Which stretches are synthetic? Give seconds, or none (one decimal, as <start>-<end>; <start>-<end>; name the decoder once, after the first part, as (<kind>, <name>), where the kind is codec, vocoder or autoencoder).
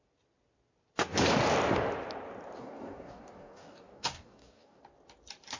2.6-4.8 (codec, DAC)